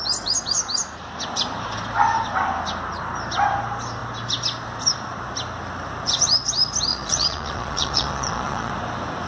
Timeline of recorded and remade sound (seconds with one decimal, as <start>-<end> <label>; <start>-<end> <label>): 0.0-6.9 recorded; 6.9-8.7 remade; 8.7-9.3 recorded